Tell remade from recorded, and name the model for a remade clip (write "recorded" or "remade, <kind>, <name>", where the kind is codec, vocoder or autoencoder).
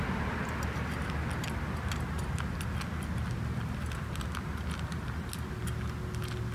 recorded